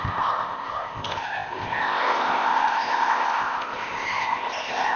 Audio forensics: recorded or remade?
remade